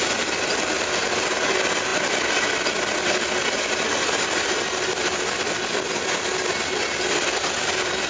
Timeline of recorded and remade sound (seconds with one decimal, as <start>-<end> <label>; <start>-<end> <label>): 0.0-8.1 recorded